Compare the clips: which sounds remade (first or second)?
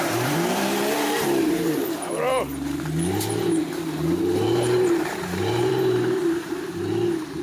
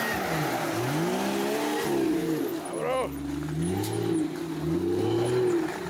first